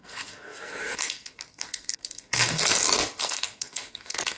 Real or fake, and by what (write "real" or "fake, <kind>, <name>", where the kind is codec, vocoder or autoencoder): fake, codec, SNAC